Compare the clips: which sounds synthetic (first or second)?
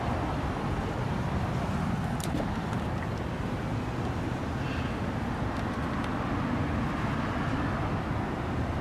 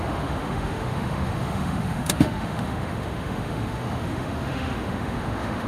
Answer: second